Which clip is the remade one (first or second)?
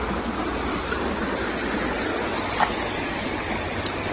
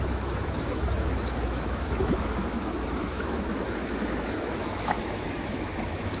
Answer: second